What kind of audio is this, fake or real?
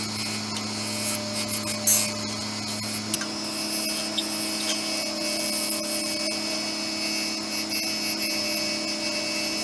real